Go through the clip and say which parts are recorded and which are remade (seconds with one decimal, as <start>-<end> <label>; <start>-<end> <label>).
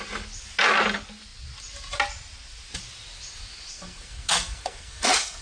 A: 0.0-3.7 recorded; 3.7-5.4 remade